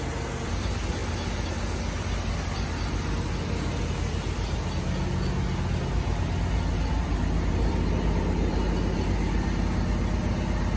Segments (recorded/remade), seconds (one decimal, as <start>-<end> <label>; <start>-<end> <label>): 0.0-10.8 recorded